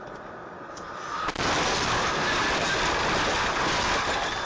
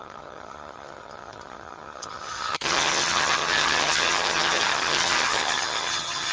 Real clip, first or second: first